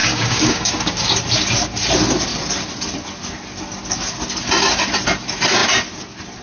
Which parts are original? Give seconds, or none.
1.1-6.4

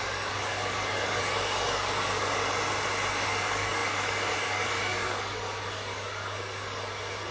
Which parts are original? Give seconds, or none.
2.4-3.1

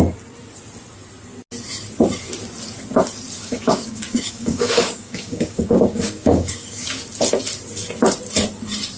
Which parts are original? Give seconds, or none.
0.0-3.4; 7.0-9.0

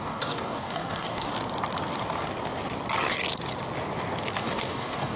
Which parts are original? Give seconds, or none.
1.3-4.4